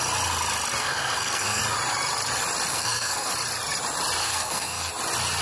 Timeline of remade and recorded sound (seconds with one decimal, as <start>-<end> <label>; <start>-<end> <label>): 0.0-0.8 recorded; 0.8-1.6 remade; 1.6-2.7 recorded; 2.7-3.3 remade; 3.3-4.2 recorded; 4.2-4.9 remade; 4.9-5.4 recorded